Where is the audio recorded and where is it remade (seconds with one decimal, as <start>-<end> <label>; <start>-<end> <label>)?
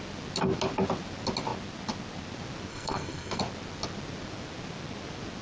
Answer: 0.0-2.7 recorded; 2.7-3.4 remade; 3.4-5.4 recorded